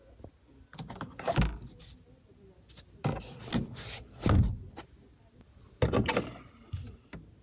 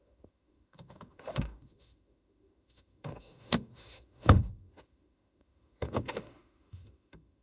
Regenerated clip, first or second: second